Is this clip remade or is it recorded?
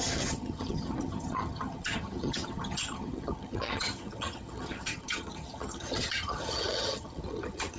remade